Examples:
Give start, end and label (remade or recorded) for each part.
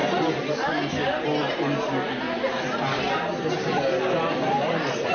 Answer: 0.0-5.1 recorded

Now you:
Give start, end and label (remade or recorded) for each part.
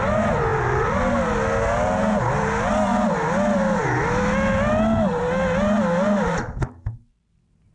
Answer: 0.0-7.7 recorded